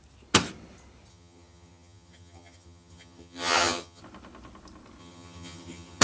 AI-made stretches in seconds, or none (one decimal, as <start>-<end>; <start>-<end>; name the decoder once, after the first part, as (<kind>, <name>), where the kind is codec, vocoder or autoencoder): 1.1-4.0 (vocoder, HiFi-GAN); 5.0-6.0